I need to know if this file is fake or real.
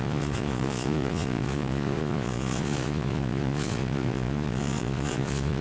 fake